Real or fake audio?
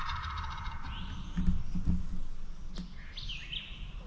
real